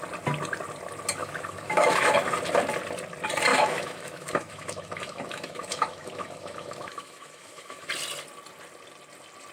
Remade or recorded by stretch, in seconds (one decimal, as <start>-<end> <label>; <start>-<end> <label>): 0.0-1.2 recorded; 1.2-2.1 remade; 2.1-3.5 recorded; 3.5-7.9 remade; 7.9-9.5 recorded